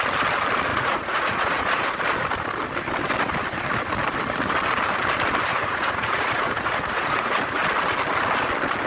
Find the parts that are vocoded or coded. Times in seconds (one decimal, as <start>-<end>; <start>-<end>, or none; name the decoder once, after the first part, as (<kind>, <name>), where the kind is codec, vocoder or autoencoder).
0.7-1.8 (vocoder, Vocos); 5.5-7.6